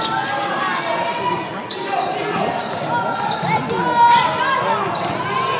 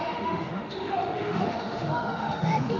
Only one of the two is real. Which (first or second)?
first